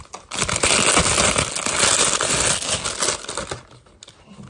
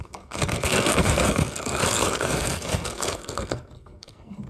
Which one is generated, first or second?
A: second